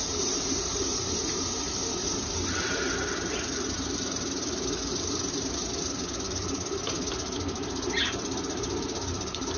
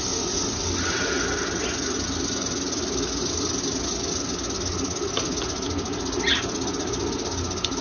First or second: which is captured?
second